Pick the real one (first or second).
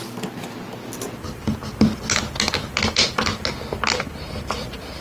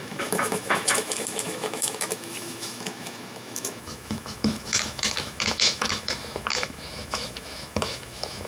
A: first